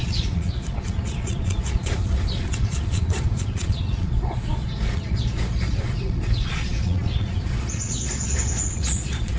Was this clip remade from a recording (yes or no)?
yes